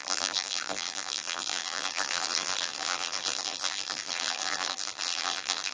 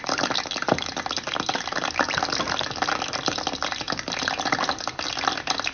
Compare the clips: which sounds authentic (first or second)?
second